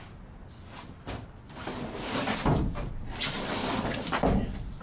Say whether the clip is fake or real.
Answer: real